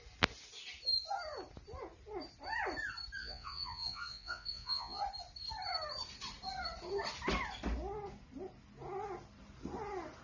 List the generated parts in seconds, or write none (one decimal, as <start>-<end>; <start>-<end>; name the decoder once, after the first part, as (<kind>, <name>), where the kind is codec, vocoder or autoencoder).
3.2-5.0 (vocoder, Vocos)